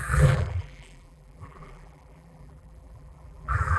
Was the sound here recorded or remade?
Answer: remade